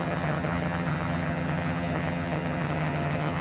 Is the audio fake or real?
fake